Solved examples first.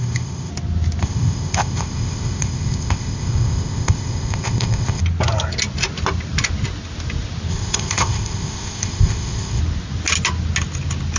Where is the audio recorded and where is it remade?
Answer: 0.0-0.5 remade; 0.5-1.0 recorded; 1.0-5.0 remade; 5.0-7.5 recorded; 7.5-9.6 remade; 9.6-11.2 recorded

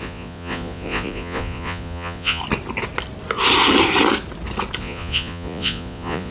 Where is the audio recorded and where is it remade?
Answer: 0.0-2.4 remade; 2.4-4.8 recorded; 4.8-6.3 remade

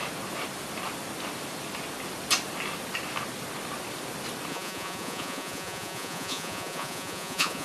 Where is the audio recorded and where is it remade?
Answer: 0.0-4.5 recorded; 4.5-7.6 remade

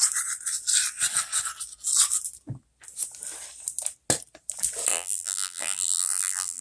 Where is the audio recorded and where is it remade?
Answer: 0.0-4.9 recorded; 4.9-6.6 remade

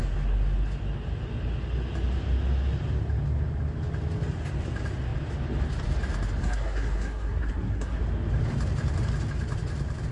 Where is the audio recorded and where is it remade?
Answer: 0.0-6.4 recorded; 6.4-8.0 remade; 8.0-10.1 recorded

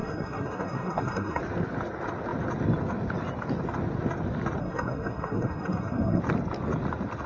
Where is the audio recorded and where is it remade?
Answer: 0.0-1.4 remade; 1.4-4.6 recorded; 4.6-6.2 remade; 6.2-7.3 recorded

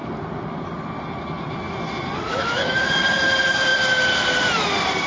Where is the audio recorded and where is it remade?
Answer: 0.0-2.3 recorded; 2.3-2.8 remade; 2.8-5.1 recorded